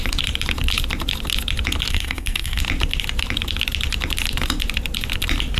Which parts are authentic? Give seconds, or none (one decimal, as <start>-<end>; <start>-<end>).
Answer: 0.0-1.9; 2.6-5.6